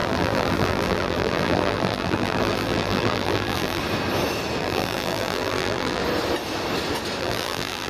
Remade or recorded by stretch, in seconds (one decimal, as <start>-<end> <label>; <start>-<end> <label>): 0.0-3.8 remade; 3.8-4.6 recorded; 4.6-6.0 remade; 6.0-7.2 recorded; 7.2-7.9 remade